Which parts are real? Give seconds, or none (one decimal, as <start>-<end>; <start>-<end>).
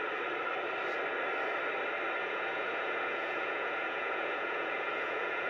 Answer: 0.0-2.2